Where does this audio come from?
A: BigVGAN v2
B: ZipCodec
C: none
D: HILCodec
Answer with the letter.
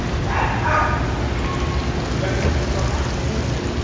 C